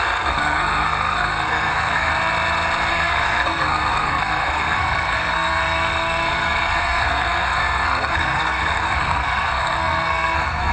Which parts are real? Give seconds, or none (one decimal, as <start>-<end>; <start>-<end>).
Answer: 2.1-2.9